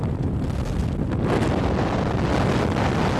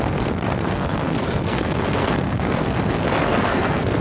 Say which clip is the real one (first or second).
first